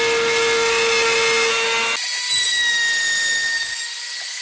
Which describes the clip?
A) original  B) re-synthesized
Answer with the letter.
A